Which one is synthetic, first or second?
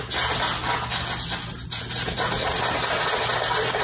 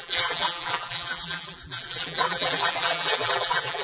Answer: second